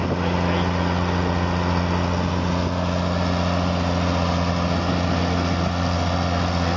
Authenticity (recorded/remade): recorded